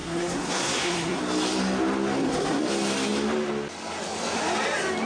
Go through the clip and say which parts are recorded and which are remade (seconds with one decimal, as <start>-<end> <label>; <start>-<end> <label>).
0.0-1.2 remade; 1.2-2.2 recorded; 2.2-2.7 remade; 2.7-5.1 recorded